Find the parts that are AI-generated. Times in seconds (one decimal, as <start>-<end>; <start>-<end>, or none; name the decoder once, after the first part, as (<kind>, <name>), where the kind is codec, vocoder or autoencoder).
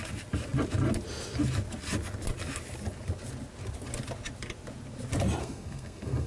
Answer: 5.4-6.3 (codec, SNAC)